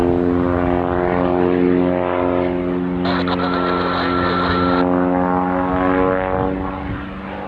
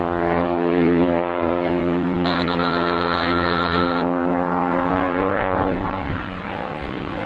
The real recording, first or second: first